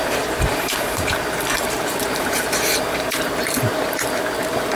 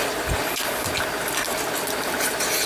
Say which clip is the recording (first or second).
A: second